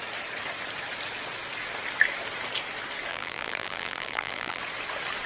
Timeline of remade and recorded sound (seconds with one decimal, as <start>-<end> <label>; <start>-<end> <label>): 0.0-3.1 recorded; 3.1-4.6 remade; 4.6-5.3 recorded